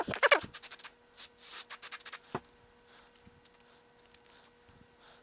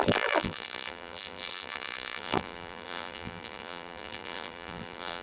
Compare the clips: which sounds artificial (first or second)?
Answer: second